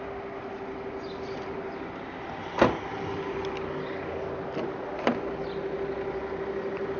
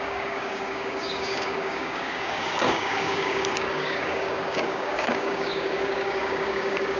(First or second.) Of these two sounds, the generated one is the second